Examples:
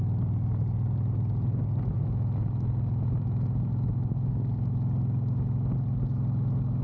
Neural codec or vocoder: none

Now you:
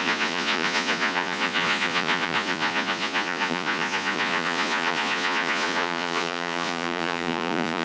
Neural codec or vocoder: vocoder, Vocos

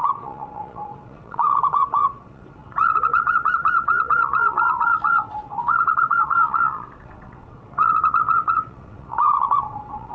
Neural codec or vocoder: vocoder, WaveNeXt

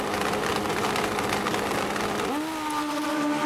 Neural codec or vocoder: none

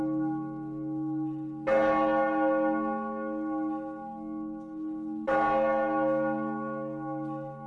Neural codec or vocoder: none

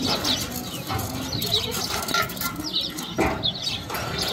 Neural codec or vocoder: none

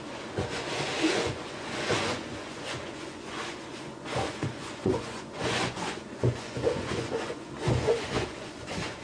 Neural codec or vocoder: vocoder, Vocos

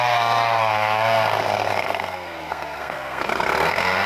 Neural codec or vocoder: codec, SNAC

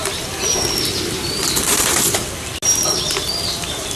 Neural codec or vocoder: none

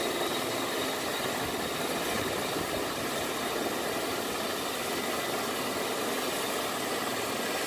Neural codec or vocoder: none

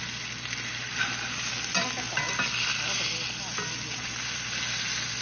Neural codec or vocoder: none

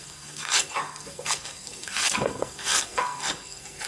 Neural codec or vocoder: codec, SNAC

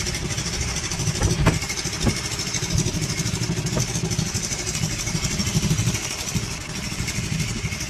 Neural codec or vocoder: vocoder, BigVGAN v2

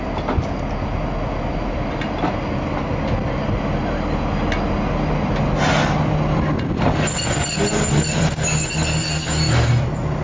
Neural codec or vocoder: none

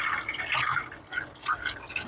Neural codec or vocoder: none